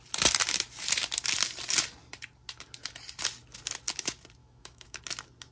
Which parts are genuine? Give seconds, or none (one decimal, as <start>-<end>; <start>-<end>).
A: 0.0-4.4; 5.0-5.5